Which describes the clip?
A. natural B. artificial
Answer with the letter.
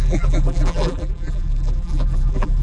B